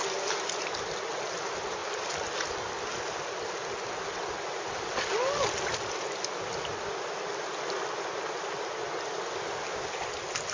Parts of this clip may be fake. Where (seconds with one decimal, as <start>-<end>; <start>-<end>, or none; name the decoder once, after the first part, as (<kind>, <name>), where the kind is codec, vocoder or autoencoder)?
none